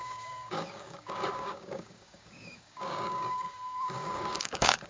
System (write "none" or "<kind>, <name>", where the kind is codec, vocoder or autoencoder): codec, DAC